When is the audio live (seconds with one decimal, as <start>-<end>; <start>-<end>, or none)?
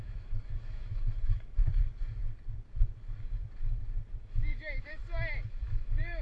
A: 1.7-4.2; 5.0-5.5